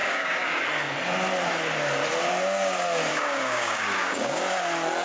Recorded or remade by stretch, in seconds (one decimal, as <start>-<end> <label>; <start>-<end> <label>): 0.0-0.6 remade; 0.6-3.1 recorded; 3.1-4.4 remade; 4.4-5.0 recorded